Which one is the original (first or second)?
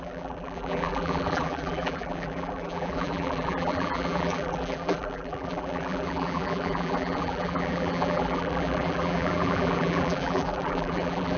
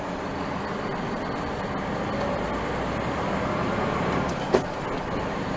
second